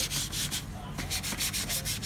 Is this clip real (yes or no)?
yes